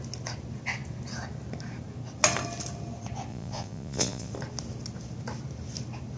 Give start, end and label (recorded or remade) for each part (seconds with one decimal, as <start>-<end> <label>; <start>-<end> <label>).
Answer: 0.0-3.3 recorded; 3.3-4.3 remade; 4.3-6.2 recorded